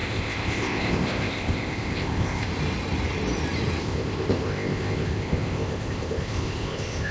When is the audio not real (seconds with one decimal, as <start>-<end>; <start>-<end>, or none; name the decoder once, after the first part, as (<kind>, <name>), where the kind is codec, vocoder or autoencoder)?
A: 0.0-2.5 (codec, ZipCodec); 3.8-7.1